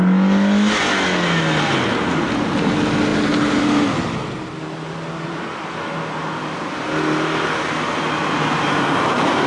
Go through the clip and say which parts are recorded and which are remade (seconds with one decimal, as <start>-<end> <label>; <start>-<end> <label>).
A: 0.0-4.2 recorded; 4.2-5.8 remade; 5.8-9.5 recorded